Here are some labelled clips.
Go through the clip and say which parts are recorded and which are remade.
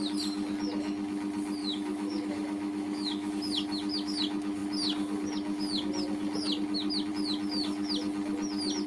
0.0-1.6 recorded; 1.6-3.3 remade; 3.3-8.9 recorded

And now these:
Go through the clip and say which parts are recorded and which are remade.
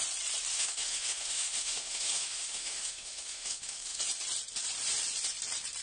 0.0-0.5 recorded; 0.5-4.0 remade; 4.0-5.8 recorded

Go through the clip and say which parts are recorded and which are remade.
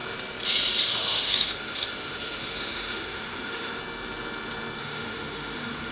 0.0-0.8 recorded; 0.8-3.7 remade; 3.7-4.8 recorded; 4.8-5.9 remade